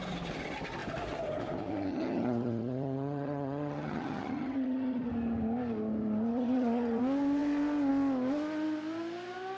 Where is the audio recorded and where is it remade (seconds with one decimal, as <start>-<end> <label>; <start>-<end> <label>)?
0.0-1.9 recorded; 1.9-5.1 remade; 5.1-6.3 recorded; 6.3-7.0 remade; 7.0-9.6 recorded